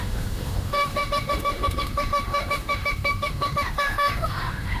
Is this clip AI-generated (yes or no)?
yes